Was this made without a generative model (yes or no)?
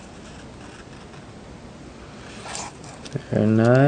yes